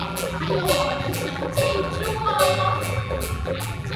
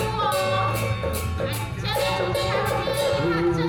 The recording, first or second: second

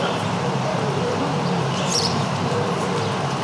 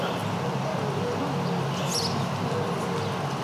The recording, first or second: second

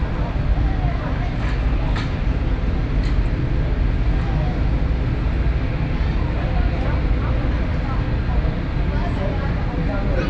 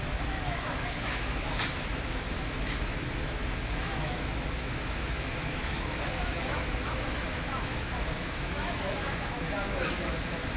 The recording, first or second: first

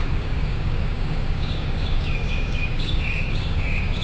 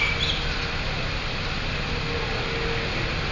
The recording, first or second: second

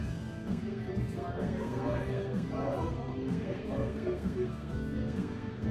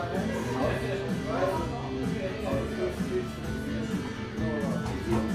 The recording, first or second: second